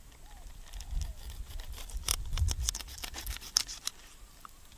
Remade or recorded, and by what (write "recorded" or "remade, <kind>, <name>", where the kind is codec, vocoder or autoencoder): recorded